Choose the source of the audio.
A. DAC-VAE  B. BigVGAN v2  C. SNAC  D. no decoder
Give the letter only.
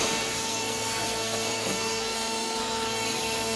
C